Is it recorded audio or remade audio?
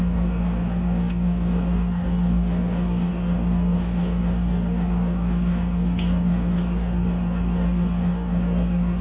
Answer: remade